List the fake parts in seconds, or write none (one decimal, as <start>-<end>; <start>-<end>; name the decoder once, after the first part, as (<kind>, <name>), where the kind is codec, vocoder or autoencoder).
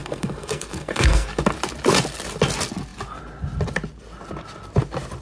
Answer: 0.0-1.4 (codec, SNAC)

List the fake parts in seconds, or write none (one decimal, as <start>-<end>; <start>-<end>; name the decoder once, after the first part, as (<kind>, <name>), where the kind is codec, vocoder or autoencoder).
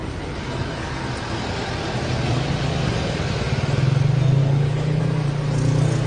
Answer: 4.4-5.0 (codec, HILCodec)